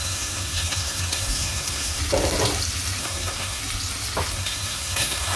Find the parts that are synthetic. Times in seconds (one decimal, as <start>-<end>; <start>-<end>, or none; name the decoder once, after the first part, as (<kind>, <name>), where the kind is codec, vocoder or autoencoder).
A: 0.0-2.0 (codec, SNAC); 3.0-3.6; 4.3-5.4